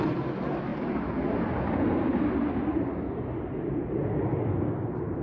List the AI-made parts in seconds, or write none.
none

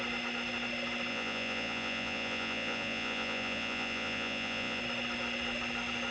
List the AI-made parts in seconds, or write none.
1.1-4.8 (vocoder, Vocos)

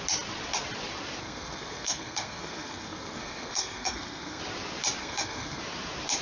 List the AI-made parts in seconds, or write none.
1.2-4.4 (codec, SNAC); 5.0-5.6